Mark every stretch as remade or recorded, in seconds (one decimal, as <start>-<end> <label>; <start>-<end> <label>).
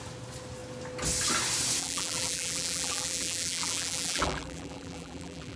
0.0-1.8 recorded; 1.8-5.6 remade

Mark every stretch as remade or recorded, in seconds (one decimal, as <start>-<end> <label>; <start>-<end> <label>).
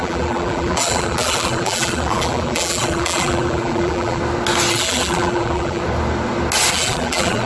0.0-4.2 remade; 4.2-4.7 recorded; 4.7-5.8 remade; 5.8-6.7 recorded; 6.7-7.5 remade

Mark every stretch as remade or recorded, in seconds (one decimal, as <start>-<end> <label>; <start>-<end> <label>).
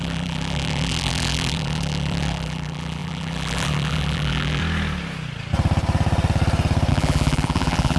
0.0-4.6 remade; 4.6-6.9 recorded; 6.9-8.0 remade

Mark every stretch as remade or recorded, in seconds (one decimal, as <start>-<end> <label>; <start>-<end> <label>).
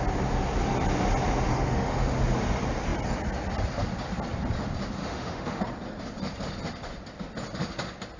0.0-1.5 recorded; 1.5-2.2 remade; 2.2-5.0 recorded; 5.0-5.6 remade; 5.6-8.2 recorded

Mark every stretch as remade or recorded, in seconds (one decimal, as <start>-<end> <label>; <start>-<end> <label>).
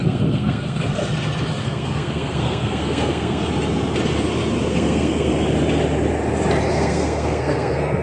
0.0-1.0 remade; 1.0-1.6 recorded; 1.6-3.4 remade; 3.4-4.7 recorded; 4.7-5.3 remade; 5.3-6.7 recorded; 6.7-8.0 remade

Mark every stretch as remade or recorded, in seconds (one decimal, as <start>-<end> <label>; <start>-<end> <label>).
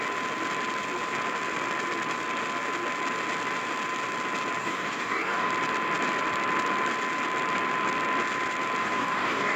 0.0-4.6 recorded; 4.6-5.5 remade; 5.5-8.8 recorded; 8.8-9.6 remade